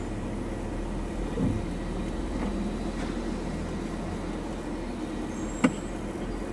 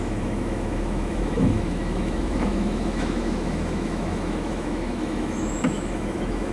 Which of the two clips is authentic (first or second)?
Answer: first